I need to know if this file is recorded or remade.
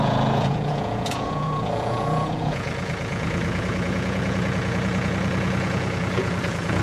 remade